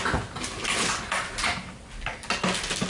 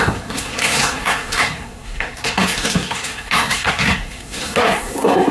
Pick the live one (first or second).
first